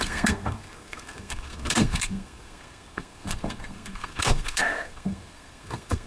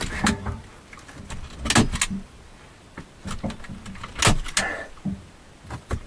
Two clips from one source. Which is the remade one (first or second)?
first